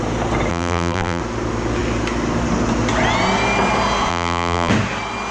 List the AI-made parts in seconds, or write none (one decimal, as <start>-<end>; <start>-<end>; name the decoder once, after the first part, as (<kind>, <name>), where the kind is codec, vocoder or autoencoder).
0.5-1.2 (vocoder, BigVGAN v2); 4.1-4.7